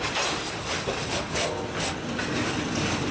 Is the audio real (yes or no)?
yes